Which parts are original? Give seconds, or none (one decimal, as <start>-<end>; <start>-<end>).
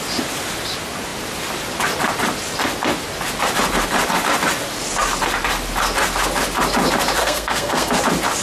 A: 0.0-7.2; 8.0-8.4